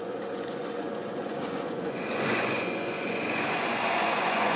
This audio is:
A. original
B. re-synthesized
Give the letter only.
B